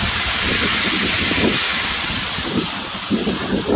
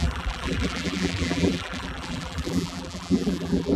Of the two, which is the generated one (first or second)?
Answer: second